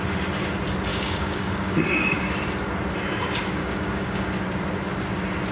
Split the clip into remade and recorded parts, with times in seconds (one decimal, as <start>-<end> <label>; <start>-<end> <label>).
0.0-0.9 recorded; 0.9-2.3 remade; 2.3-3.6 recorded; 3.6-4.3 remade; 4.3-5.5 recorded